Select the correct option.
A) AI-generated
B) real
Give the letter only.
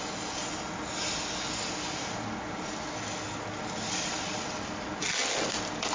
B